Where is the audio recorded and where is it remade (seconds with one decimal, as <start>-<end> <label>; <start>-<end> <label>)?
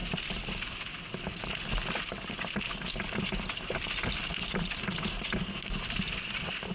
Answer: 0.0-0.5 remade; 0.5-4.3 recorded; 4.3-5.0 remade; 5.0-6.7 recorded